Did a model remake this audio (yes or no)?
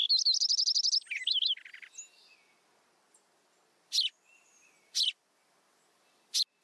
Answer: no